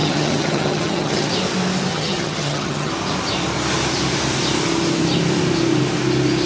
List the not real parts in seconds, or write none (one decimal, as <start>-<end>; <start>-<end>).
0.0-1.3; 1.9-2.9